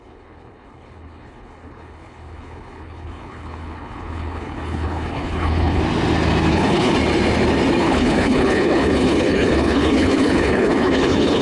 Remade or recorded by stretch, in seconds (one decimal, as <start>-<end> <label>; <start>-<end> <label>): 0.0-5.8 remade; 5.8-6.5 recorded; 6.5-6.9 remade; 6.9-7.8 recorded; 7.8-11.4 remade